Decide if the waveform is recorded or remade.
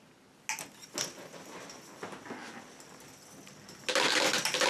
recorded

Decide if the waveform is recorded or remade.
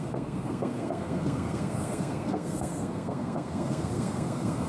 remade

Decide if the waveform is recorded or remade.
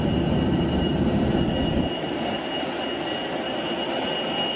recorded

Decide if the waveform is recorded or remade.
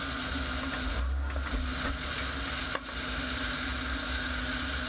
recorded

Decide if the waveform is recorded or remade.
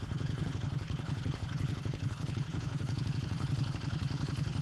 remade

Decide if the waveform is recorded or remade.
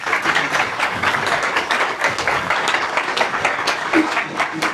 remade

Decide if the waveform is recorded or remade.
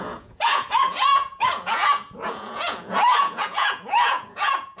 remade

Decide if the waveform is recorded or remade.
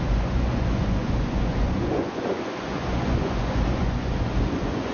remade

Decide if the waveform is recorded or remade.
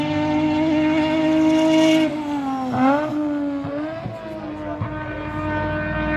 recorded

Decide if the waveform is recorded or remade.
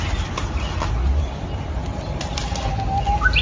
recorded